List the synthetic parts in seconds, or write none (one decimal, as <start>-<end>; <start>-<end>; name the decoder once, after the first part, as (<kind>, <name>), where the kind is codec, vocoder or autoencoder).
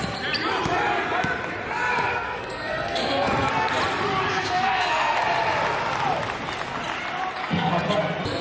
2.1-3.7 (codec, SNAC); 4.3-5.2; 7.4-8.0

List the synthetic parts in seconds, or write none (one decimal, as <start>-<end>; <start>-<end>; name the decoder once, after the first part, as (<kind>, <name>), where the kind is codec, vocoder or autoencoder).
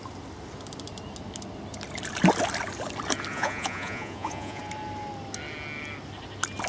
3.3-4.6 (vocoder, Vocos)